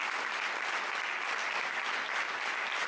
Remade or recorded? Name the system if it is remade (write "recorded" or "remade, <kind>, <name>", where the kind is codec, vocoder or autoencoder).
recorded